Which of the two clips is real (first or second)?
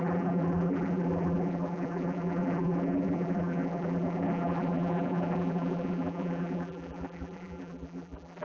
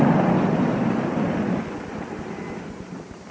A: second